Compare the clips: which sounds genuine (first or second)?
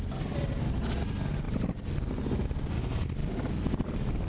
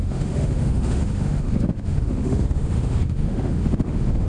first